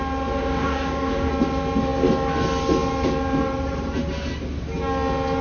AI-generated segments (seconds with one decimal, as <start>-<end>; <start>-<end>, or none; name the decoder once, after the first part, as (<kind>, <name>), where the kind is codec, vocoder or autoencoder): 0.4-1.3 (codec, DAC)